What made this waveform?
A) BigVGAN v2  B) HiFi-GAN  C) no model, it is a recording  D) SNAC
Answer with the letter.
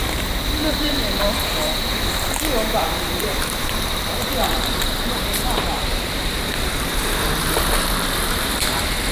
A